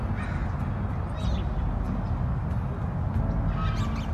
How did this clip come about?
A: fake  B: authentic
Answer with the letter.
B